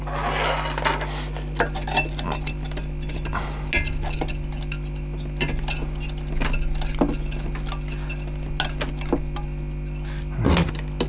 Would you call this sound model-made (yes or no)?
no